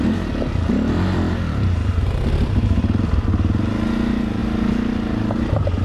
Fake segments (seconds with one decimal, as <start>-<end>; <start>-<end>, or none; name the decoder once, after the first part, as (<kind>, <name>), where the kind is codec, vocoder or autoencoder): none